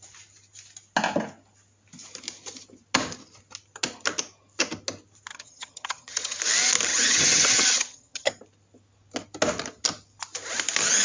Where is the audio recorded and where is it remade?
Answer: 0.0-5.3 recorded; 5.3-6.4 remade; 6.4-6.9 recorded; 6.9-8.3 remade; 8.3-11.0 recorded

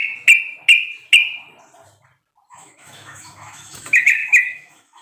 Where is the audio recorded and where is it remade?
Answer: 0.0-2.5 recorded; 2.5-5.0 remade

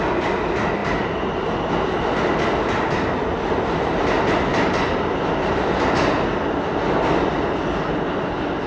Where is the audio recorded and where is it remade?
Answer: 0.0-8.7 recorded

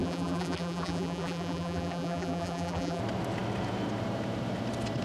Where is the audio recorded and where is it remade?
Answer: 0.0-3.0 remade; 3.0-5.0 recorded

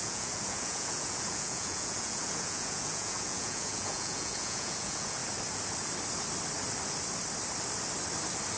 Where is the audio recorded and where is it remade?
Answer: 0.0-5.2 remade; 5.2-8.6 recorded

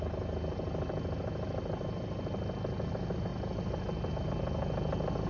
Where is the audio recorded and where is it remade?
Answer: 0.0-3.3 recorded; 3.3-4.1 remade; 4.1-5.3 recorded

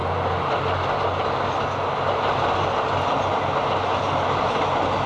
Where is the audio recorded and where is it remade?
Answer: 0.0-5.1 recorded

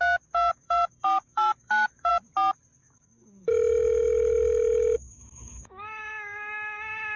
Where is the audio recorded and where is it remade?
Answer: 0.0-0.5 recorded; 0.5-2.1 remade; 2.1-2.8 recorded; 2.8-7.2 remade